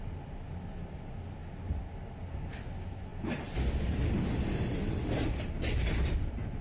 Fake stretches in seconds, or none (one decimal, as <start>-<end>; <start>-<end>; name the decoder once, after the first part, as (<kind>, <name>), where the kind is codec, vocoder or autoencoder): none